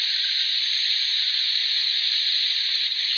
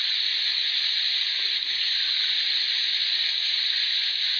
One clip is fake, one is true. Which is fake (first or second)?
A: first